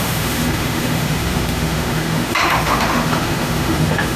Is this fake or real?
fake